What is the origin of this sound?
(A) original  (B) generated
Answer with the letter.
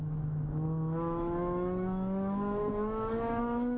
B